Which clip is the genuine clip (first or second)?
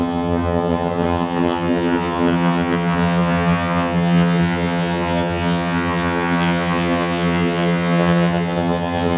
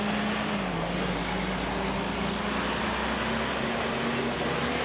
second